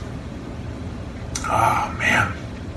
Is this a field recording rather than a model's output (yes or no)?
no